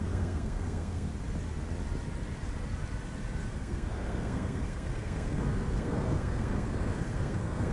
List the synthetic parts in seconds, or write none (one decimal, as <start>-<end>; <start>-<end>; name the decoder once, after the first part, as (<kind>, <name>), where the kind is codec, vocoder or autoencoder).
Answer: 0.0-1.1 (codec, SNAC); 3.5-7.7